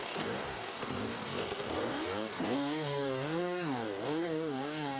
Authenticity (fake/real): fake